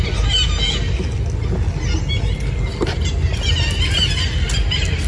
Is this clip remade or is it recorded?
recorded